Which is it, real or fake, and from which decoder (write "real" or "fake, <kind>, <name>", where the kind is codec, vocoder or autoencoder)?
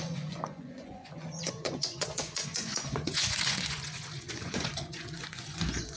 fake, vocoder, Vocos